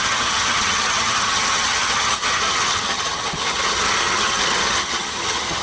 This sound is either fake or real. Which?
fake